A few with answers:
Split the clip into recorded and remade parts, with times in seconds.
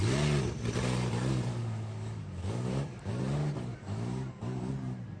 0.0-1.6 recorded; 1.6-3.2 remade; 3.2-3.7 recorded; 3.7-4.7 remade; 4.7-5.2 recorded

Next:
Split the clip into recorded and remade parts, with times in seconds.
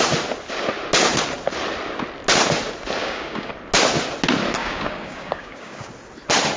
0.0-3.0 recorded; 3.0-3.5 remade; 3.5-4.6 recorded; 4.6-5.9 remade; 5.9-6.6 recorded